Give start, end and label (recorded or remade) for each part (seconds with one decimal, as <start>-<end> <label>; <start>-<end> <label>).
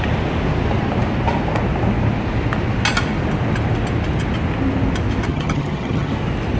0.0-5.3 recorded; 5.3-6.1 remade; 6.1-6.6 recorded